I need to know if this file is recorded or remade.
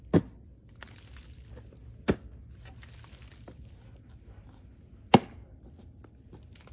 recorded